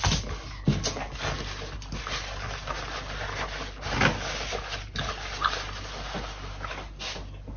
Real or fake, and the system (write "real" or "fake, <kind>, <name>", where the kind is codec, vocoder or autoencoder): real